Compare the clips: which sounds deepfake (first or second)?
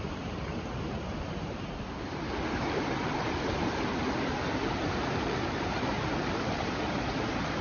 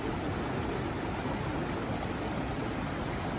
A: first